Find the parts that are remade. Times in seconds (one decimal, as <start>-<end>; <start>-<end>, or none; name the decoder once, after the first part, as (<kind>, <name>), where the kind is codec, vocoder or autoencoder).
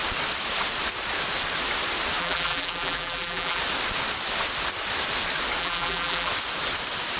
2.2-3.6 (vocoder, BigVGAN v2); 5.6-6.3